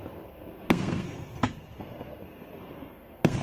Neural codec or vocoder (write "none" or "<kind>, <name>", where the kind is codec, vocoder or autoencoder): codec, SNAC